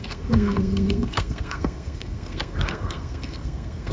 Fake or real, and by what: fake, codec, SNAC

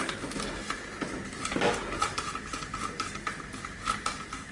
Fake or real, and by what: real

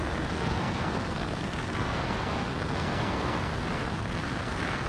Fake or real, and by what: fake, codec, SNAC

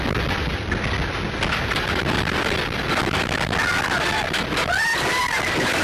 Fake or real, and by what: real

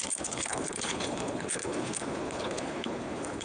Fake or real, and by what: fake, codec, HILCodec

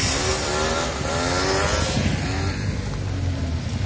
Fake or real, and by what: real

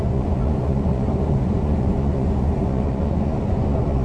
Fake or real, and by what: fake, vocoder, Vocos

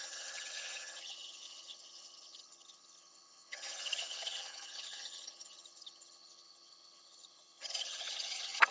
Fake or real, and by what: fake, vocoder, HiFi-GAN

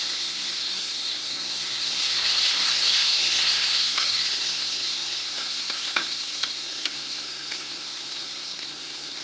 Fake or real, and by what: fake, codec, SNAC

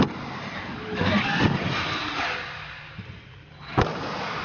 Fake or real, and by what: real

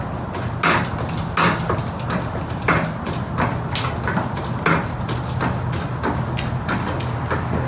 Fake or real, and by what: real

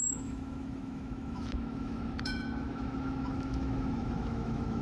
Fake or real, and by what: fake, autoencoder, DAC-VAE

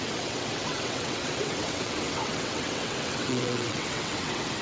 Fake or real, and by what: fake, vocoder, WaveNeXt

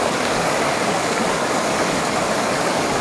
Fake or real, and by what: fake, codec, DAC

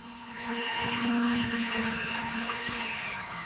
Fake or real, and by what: fake, codec, HILCodec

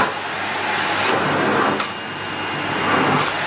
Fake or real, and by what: real